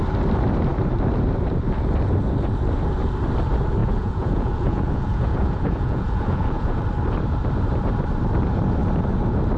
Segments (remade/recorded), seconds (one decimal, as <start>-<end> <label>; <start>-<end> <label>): 0.0-3.8 recorded; 3.8-6.8 remade; 6.8-9.6 recorded